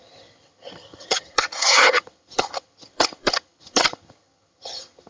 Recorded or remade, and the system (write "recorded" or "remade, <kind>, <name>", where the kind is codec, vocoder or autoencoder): remade, vocoder, HiFi-GAN